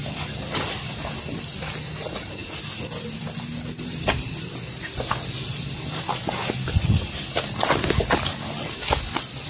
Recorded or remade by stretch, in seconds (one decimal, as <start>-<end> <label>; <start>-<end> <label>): 0.0-9.5 recorded